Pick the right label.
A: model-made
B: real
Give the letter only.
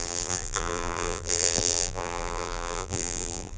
A